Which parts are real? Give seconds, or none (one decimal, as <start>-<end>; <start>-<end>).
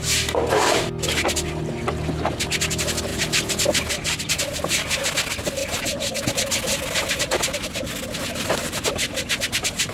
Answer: 0.0-9.9